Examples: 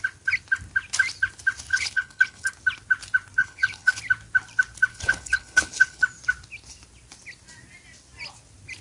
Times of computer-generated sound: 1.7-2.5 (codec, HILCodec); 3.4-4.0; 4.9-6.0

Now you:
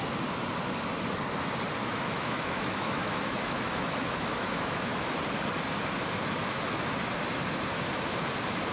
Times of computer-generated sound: 1.8-5.1 (autoencoder, DAC-VAE)

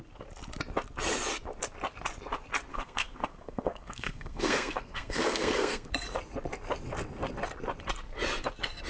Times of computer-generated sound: 2.7-5.9 (codec, SNAC)

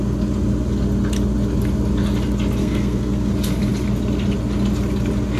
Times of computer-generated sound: 2.6-3.3 (codec, SNAC)

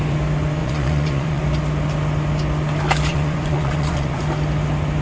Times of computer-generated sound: 0.6-1.4 (vocoder, Vocos); 3.1-4.2

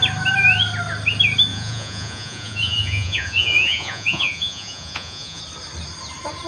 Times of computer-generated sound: 1.5-5.4 (vocoder, Vocos)